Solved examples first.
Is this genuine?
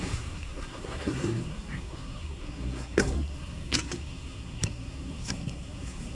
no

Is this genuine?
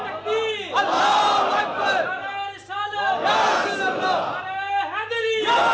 yes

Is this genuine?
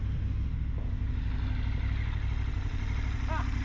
yes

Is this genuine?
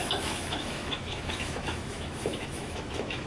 no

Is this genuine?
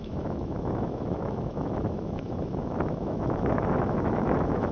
no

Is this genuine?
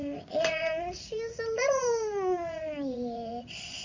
no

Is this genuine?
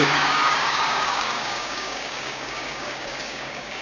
no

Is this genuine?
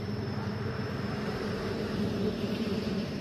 no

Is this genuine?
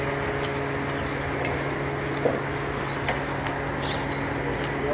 yes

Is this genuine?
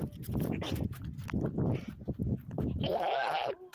yes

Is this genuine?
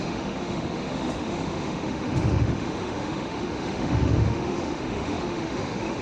no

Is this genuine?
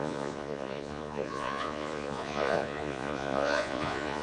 no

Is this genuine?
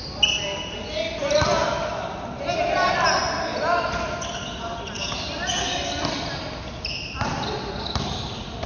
yes